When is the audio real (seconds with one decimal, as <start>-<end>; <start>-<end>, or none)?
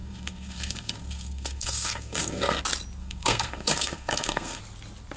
2.6-3.0; 4.6-5.2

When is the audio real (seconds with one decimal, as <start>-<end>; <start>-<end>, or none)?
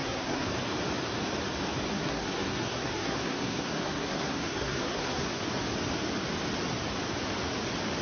0.5-1.9; 5.4-8.0